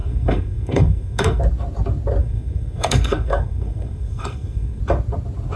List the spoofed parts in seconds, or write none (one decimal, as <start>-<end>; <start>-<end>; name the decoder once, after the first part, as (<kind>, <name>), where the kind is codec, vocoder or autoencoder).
0.0-1.4 (codec, SNAC); 2.2-4.8